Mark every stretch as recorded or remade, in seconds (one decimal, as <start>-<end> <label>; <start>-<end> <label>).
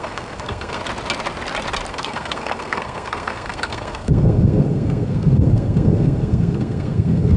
0.0-0.8 remade; 0.8-1.9 recorded; 1.9-7.4 remade